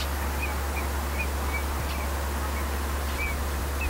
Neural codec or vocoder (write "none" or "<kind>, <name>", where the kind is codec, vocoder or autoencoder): none